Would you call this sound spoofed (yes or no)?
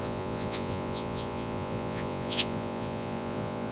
yes